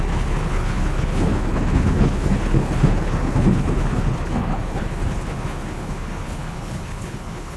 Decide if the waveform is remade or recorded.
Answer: remade